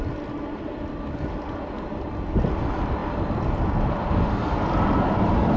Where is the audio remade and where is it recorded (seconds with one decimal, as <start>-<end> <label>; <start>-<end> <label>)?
0.0-5.6 recorded